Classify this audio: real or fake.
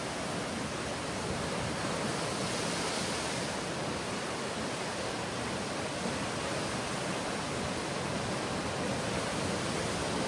real